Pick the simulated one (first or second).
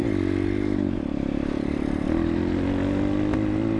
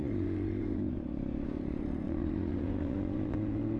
second